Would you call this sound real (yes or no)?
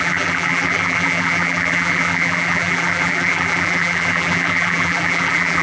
no